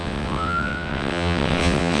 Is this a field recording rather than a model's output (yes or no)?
no